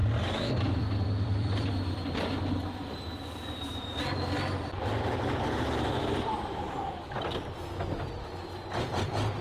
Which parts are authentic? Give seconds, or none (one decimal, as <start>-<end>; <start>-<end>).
1.7-2.4; 4.0-9.4

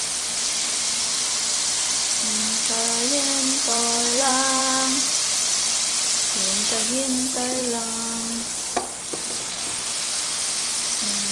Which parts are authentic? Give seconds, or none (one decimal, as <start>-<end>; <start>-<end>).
0.0-3.7; 4.6-11.3

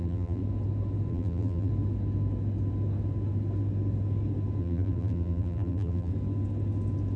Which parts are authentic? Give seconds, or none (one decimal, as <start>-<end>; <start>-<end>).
0.4-1.1; 1.7-4.6; 6.1-7.2

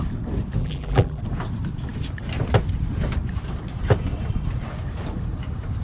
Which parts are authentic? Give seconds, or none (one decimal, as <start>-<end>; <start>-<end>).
0.0-0.6; 1.2-5.8

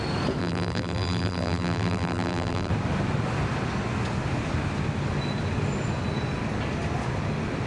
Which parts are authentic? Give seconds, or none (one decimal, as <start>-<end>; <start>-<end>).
0.0-0.4; 2.7-7.7

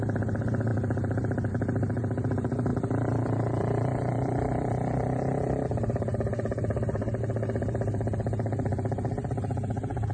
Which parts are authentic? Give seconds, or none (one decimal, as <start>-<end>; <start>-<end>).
none

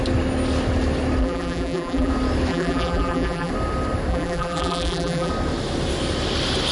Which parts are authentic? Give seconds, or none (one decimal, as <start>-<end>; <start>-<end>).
0.0-1.2; 2.1-2.5; 3.5-4.1; 5.3-6.7

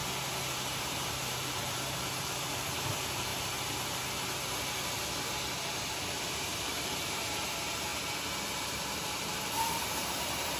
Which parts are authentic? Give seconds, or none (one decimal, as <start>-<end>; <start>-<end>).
0.0-1.1; 3.3-5.9